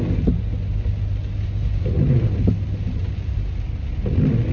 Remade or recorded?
recorded